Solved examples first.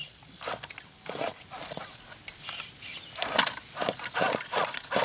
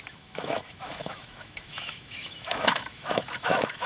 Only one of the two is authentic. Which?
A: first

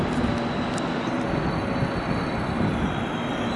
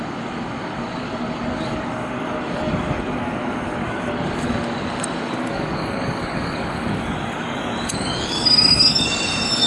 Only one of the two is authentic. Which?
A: first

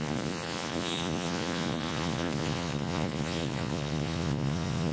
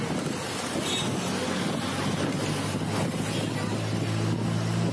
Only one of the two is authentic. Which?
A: second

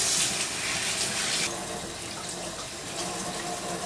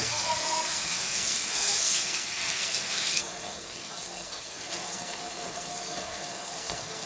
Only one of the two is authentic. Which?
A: first